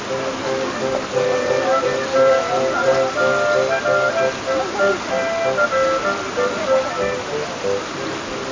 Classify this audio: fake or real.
real